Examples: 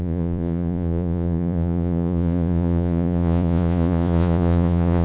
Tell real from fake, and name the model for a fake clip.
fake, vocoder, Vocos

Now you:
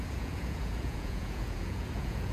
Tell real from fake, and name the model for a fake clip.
fake, vocoder, Vocos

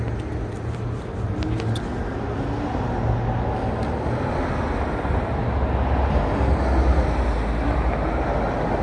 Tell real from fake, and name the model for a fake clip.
real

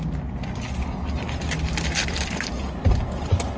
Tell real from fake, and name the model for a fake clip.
real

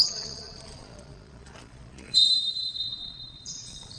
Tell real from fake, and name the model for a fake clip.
fake, vocoder, Vocos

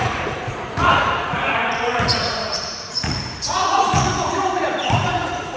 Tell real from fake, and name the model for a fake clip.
fake, vocoder, Vocos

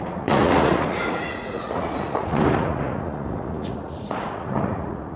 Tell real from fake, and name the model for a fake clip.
fake, vocoder, Vocos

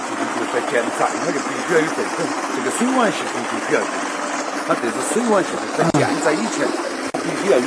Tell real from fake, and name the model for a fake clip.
real